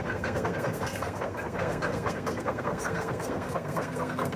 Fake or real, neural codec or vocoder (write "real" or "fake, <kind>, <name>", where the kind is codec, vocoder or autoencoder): fake, codec, SNAC